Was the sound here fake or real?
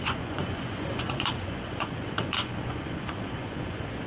fake